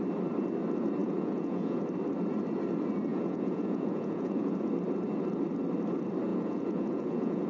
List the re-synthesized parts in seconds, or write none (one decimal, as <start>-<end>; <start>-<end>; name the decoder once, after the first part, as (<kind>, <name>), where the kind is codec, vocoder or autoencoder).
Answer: 1.0-1.8 (vocoder, Vocos); 3.1-4.7; 6.3-7.5